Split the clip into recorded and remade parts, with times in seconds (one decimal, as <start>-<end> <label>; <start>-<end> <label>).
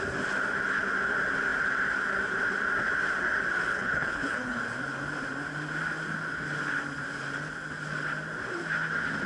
0.0-3.7 recorded; 3.7-4.6 remade; 4.6-9.3 recorded